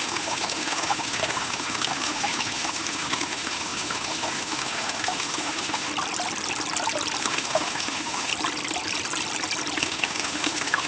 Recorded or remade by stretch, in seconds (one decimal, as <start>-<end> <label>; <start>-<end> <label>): 0.0-5.9 remade; 5.9-7.2 recorded; 7.2-8.3 remade; 8.3-9.8 recorded; 9.8-10.9 remade